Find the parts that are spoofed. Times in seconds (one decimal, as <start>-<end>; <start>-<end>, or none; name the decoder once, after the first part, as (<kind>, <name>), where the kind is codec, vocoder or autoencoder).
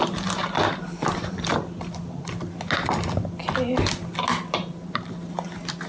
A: none